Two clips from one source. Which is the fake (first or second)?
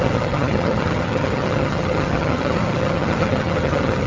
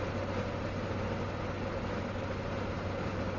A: first